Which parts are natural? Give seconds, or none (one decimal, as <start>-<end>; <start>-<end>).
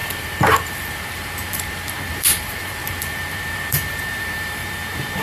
none